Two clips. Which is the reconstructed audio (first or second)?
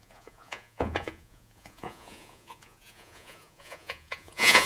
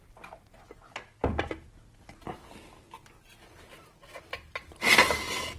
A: first